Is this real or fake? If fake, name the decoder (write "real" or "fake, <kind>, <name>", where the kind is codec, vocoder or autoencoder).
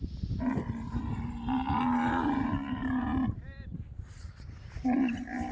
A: fake, vocoder, BigVGAN v2